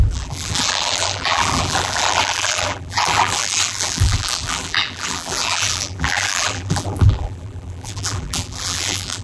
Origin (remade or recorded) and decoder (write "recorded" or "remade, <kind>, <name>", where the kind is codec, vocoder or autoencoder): remade, vocoder, BigVGAN v2